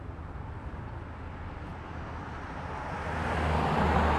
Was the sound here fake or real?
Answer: real